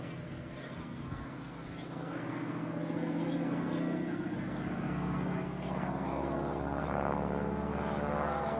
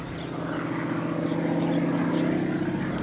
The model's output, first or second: first